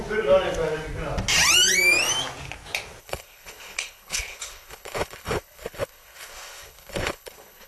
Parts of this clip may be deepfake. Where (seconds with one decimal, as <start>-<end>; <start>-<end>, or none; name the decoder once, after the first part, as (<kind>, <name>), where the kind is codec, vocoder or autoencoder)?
3.0-7.7 (codec, HILCodec)